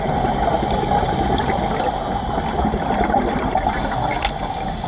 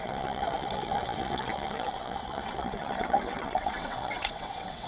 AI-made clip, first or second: second